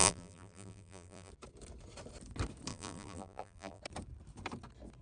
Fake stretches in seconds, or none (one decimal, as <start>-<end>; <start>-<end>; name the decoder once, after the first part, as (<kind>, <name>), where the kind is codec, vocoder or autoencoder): 0.0-1.3 (vocoder, BigVGAN v2); 2.7-3.8